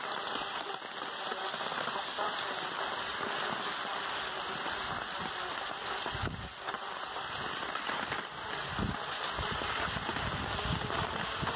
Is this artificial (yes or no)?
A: no